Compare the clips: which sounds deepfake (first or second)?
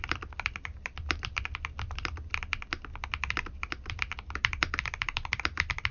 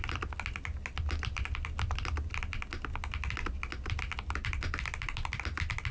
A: first